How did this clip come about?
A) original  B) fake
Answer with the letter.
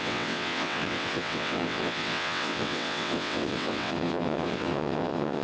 B